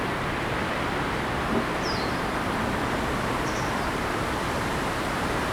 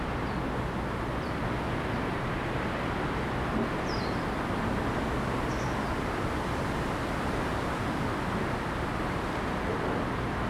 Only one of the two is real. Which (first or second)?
second